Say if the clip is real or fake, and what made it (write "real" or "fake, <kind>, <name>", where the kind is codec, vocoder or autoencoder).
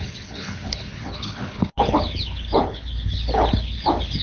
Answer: fake, codec, HILCodec